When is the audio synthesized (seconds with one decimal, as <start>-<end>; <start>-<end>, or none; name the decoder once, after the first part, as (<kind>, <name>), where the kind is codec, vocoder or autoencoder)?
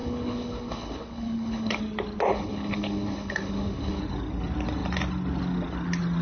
0.0-1.8 (codec, HILCodec); 2.3-4.0